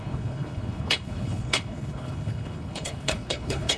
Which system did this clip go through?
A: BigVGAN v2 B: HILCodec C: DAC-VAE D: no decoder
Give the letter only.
B